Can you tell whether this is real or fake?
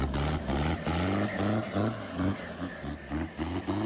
real